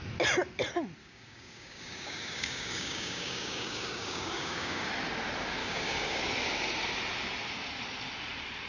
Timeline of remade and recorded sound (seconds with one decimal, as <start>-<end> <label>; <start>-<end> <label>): 0.0-1.0 recorded; 1.0-4.9 remade; 4.9-5.6 recorded; 5.6-6.2 remade; 6.2-8.7 recorded